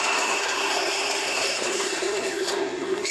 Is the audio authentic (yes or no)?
no